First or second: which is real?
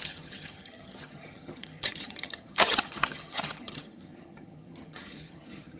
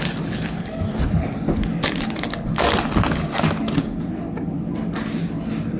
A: second